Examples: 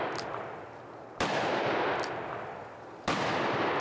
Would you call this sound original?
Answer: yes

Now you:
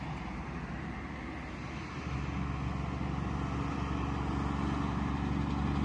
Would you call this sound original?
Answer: yes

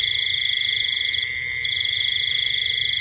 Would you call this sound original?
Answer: yes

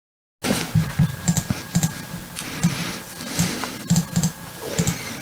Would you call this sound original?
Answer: yes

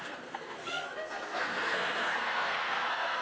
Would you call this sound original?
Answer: no